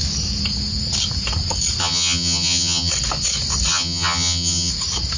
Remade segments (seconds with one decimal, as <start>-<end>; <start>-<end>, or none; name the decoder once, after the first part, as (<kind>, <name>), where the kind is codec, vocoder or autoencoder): 1.8-2.9 (vocoder, HiFi-GAN); 3.7-4.7